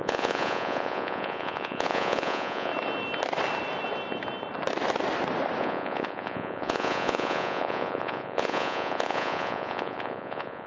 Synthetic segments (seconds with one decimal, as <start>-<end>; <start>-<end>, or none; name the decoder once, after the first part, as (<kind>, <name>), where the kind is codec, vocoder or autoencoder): 0.0-2.7 (vocoder, Vocos); 5.6-10.7